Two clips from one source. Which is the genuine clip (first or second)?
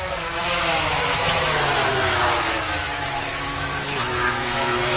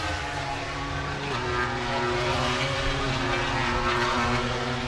second